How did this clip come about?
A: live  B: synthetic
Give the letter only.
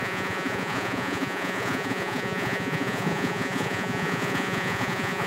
B